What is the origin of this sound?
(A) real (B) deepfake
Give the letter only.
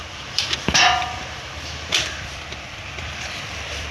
B